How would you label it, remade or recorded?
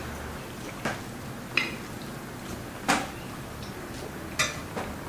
recorded